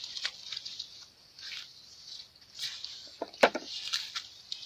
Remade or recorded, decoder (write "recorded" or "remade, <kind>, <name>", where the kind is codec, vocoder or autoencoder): remade, vocoder, BigVGAN v2